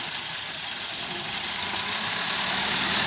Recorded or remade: recorded